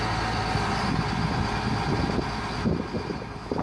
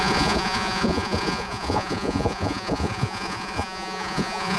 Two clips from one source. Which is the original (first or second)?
first